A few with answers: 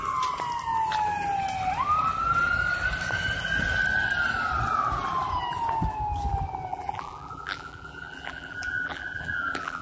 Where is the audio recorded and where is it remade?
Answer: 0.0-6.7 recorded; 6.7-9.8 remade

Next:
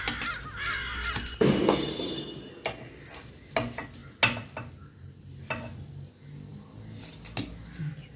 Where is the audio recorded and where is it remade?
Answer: 0.0-8.2 recorded